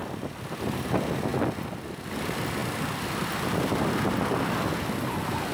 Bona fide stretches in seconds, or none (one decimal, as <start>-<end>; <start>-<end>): 0.0-1.3; 2.1-5.5